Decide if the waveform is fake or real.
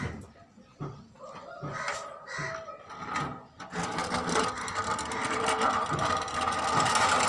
real